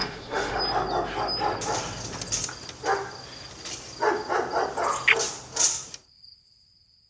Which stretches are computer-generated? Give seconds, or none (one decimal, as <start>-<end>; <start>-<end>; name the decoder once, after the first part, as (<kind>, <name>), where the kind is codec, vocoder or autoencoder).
0.0-0.6 (autoencoder, DAC-VAE)